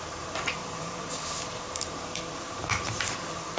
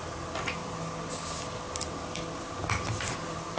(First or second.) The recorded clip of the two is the second